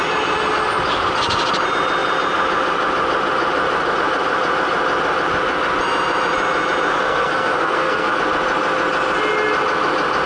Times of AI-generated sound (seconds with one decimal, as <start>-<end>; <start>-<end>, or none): 6.9-8.2